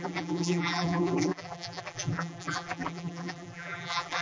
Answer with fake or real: fake